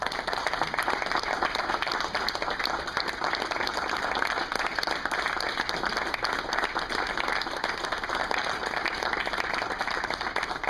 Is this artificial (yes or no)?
yes